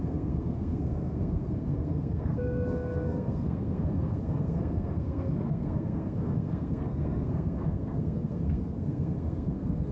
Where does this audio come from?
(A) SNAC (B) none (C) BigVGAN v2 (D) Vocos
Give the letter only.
A